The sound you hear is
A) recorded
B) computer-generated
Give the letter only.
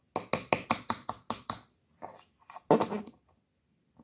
A